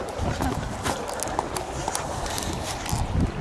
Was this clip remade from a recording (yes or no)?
no